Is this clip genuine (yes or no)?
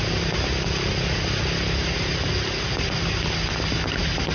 yes